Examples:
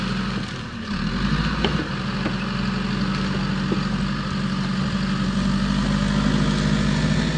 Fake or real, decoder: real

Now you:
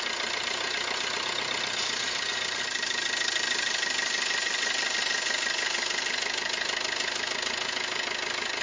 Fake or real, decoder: fake, vocoder, BigVGAN v2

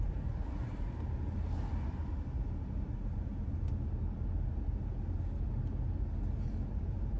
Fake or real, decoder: real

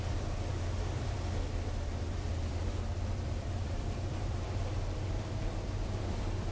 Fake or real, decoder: fake, vocoder, BigVGAN v2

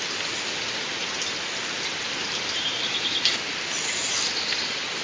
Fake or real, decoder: real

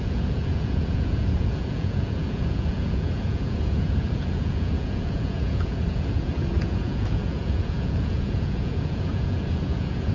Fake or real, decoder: fake, vocoder, Vocos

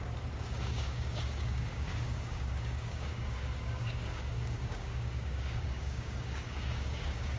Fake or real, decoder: fake, codec, DAC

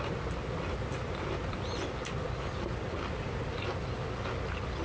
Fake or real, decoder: real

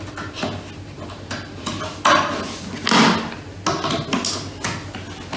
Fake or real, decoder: real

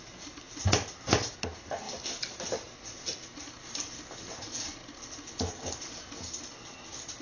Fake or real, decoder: real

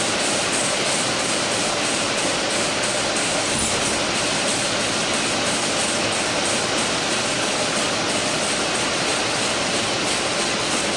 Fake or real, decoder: real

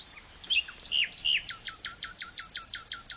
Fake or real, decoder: real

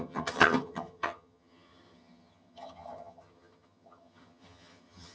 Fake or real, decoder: fake, vocoder, HiFi-GAN